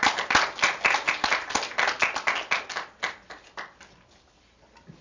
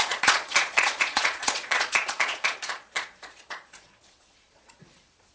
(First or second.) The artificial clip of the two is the second